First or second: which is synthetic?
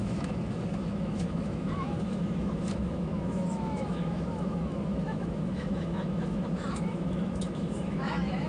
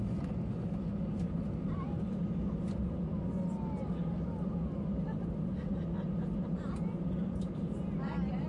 first